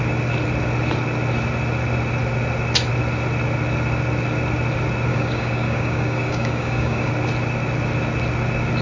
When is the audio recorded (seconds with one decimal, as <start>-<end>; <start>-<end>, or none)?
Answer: 0.0-5.1; 7.1-8.8